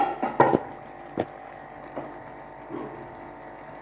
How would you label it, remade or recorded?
recorded